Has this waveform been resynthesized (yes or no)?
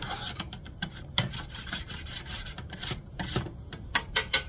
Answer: yes